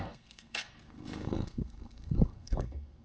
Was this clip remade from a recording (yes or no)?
yes